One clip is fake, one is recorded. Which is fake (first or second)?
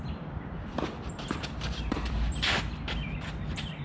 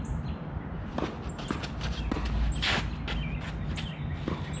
first